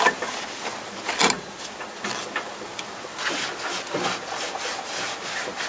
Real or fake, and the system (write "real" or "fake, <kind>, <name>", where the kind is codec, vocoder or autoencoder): real